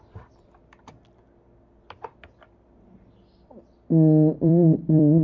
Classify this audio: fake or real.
fake